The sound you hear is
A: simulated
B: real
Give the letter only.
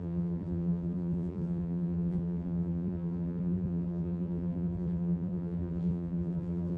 A